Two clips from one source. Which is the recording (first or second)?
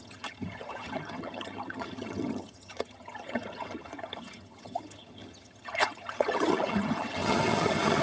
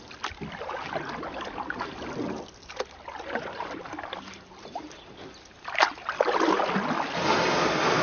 second